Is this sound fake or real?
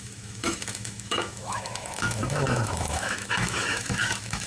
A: fake